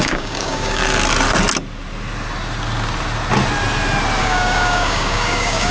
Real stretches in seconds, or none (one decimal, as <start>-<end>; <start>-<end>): 0.8-4.2